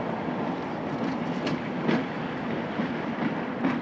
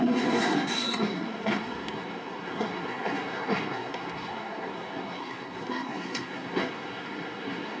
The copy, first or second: second